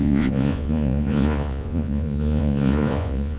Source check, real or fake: fake